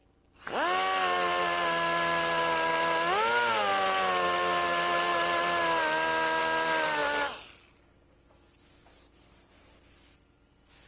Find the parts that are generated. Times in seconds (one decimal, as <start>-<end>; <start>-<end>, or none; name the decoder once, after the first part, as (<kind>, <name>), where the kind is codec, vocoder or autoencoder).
none